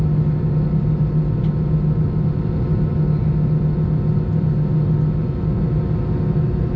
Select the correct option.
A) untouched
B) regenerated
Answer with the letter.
A